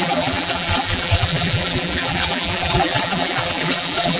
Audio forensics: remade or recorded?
remade